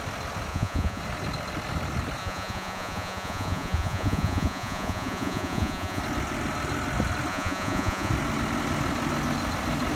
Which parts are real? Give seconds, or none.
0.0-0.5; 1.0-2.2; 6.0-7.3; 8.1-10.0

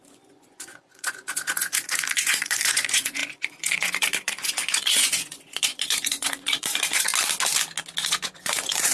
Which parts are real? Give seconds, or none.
7.1-8.1

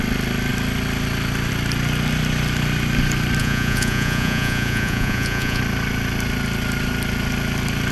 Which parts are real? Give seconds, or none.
0.0-3.4; 5.6-7.9

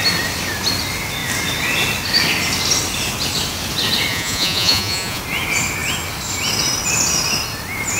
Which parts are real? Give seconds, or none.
0.0-4.1; 5.2-8.0

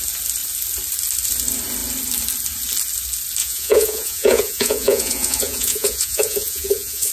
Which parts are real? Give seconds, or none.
0.0-3.4